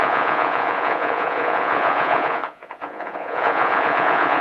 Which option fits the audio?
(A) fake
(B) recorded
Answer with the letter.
A